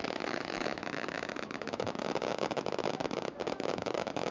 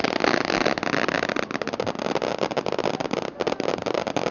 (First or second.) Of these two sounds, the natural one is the second